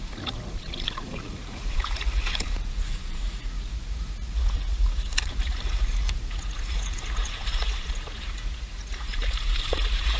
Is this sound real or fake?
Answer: fake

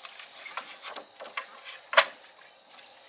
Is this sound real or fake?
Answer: real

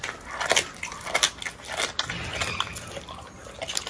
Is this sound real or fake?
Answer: real